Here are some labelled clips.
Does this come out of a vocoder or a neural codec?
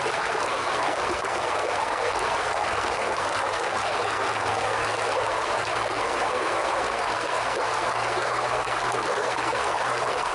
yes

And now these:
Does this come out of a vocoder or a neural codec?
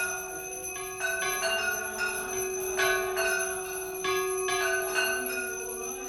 no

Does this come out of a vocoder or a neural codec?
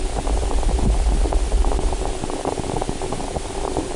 no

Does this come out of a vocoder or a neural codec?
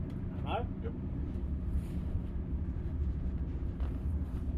yes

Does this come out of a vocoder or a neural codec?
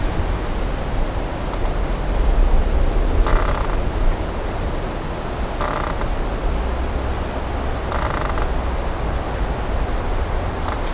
no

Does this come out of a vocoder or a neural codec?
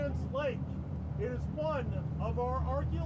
no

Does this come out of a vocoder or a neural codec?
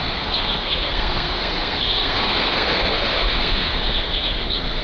yes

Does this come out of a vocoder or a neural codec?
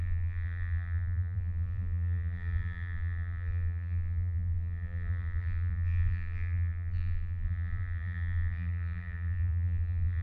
yes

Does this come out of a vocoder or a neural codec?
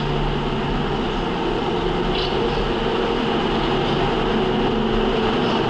no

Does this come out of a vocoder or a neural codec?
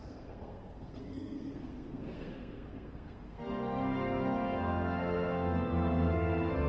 yes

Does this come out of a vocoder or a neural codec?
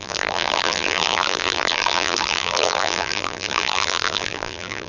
yes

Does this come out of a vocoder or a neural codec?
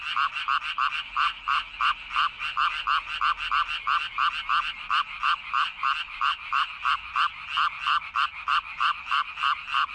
no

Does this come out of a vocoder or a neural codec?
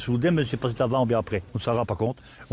no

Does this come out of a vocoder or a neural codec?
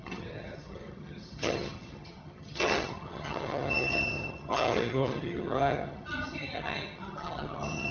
yes